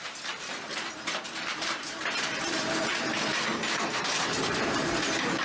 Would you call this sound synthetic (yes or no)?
yes